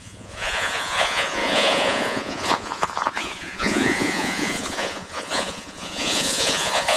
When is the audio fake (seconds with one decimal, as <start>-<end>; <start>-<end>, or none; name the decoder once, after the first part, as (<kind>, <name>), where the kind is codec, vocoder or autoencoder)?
0.0-7.0 (vocoder, Vocos)